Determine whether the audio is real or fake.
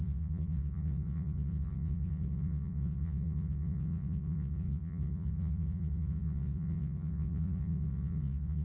fake